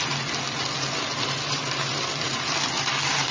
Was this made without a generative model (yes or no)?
yes